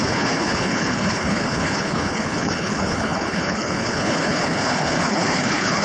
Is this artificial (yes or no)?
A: yes